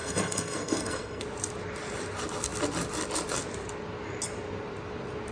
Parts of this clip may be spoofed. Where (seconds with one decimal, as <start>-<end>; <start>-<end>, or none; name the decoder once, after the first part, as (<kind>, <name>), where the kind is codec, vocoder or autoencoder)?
0.0-1.2 (codec, SNAC)